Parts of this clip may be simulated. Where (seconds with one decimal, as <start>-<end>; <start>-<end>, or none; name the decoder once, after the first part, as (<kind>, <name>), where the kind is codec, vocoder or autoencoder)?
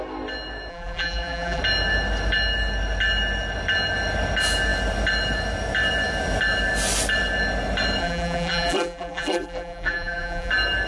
0.7-1.6 (vocoder, BigVGAN v2); 8.0-10.5